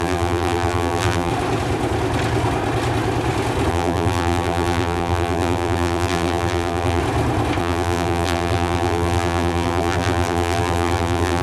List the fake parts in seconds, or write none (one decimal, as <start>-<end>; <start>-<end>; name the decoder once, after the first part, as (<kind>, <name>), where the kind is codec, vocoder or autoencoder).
0.0-1.3 (vocoder, BigVGAN v2); 3.7-7.0; 7.6-11.4